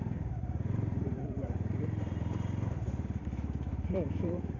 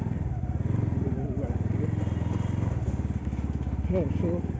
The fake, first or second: first